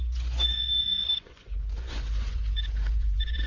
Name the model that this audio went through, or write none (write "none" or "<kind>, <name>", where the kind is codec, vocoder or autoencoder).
vocoder, Vocos